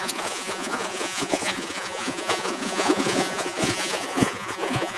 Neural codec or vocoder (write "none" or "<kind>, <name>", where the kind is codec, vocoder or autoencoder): vocoder, Vocos